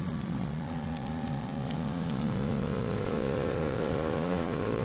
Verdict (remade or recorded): remade